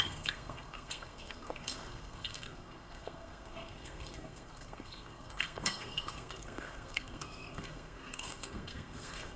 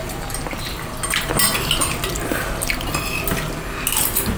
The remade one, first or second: first